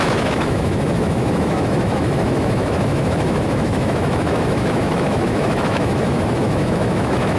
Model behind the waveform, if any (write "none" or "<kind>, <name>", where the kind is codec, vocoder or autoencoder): autoencoder, DAC-VAE